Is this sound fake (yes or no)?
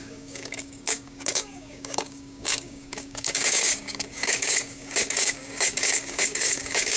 yes